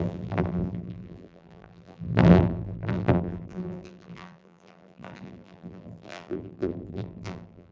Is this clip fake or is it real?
fake